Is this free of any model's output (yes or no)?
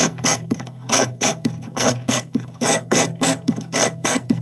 no